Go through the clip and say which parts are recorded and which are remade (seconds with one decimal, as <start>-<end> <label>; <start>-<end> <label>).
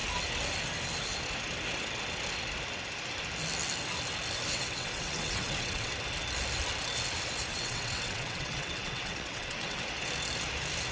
0.0-4.5 recorded; 4.5-5.9 remade; 5.9-7.5 recorded; 7.5-9.8 remade; 9.8-10.9 recorded